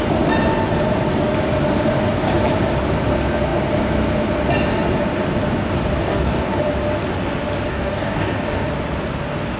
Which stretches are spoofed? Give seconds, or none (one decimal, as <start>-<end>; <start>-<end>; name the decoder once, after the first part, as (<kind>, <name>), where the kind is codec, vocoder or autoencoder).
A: 6.0-6.6 (codec, DAC); 7.7-8.7